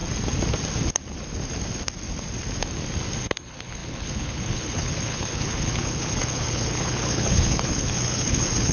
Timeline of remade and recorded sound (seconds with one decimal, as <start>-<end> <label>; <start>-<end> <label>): 0.0-3.2 recorded; 3.2-8.7 remade